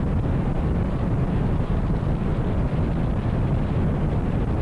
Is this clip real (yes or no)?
yes